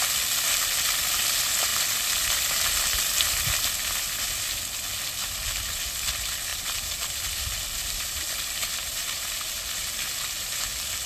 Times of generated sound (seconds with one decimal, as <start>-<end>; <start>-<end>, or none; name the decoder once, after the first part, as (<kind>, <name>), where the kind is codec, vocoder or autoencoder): 6.5-7.2 (vocoder, BigVGAN v2); 8.8-9.5